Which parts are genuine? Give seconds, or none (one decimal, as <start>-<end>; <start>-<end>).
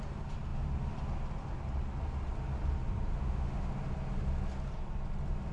0.0-3.1; 3.7-5.5